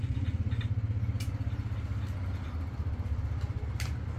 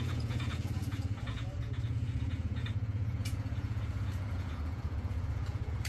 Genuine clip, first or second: first